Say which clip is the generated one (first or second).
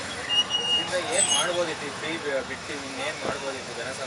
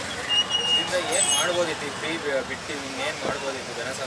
first